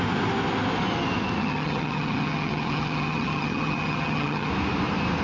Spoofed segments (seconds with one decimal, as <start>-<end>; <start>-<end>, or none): 1.4-4.5